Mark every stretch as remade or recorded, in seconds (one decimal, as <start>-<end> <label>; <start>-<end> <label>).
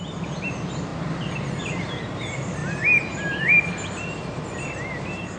0.0-5.4 recorded